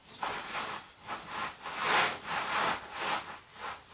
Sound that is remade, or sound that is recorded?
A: recorded